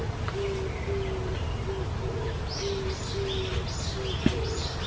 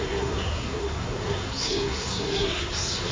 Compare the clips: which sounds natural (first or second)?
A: first